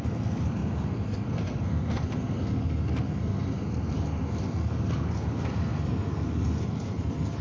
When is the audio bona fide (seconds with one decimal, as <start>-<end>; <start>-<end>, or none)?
none